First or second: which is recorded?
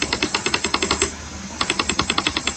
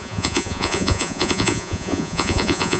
first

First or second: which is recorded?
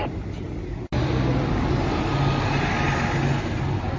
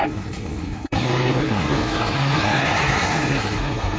first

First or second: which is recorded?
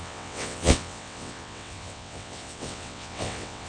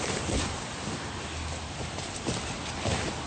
second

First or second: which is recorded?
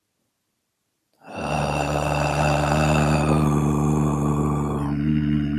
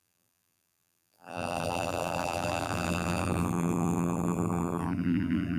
first